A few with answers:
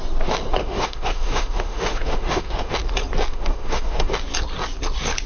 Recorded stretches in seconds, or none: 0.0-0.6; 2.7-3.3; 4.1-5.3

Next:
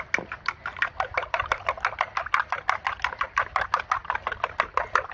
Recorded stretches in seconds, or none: 0.0-1.1; 1.7-5.1